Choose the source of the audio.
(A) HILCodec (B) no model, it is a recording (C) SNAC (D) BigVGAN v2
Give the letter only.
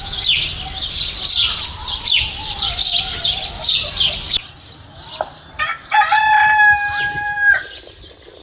B